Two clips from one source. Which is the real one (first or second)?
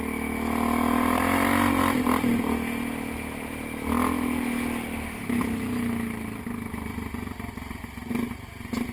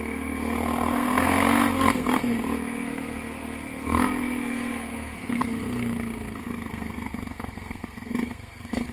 first